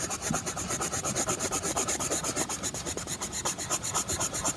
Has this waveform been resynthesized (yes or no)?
yes